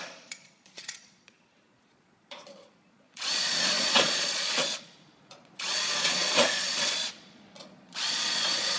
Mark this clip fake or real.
fake